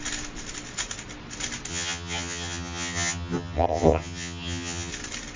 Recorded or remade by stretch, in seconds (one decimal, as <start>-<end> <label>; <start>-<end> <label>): 0.0-1.7 recorded; 1.7-4.9 remade; 4.9-5.4 recorded